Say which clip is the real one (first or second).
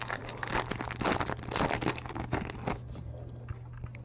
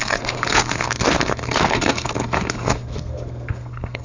first